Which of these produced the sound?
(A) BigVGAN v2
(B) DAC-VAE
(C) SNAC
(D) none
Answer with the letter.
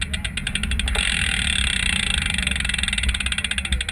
D